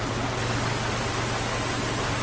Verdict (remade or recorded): recorded